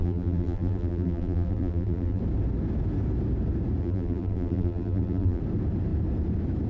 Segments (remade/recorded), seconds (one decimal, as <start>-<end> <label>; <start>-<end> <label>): 0.0-2.2 remade; 2.2-3.8 recorded; 3.8-5.4 remade; 5.4-6.7 recorded